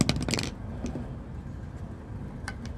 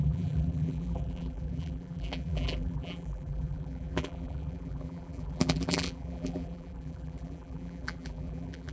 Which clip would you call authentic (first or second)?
first